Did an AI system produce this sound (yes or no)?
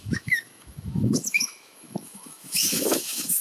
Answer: yes